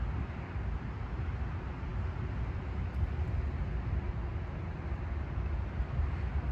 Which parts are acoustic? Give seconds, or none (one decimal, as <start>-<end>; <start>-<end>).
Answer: 0.0-6.5